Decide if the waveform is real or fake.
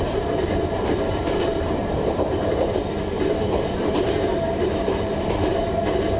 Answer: fake